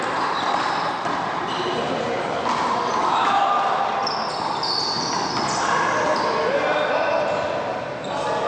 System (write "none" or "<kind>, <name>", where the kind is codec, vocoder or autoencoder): none